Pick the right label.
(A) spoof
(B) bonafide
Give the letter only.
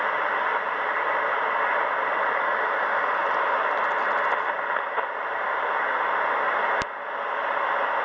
B